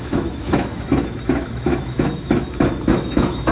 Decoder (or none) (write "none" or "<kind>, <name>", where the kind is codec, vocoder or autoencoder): autoencoder, DAC-VAE